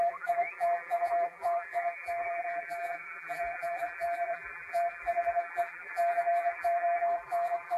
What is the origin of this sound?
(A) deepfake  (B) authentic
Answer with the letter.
A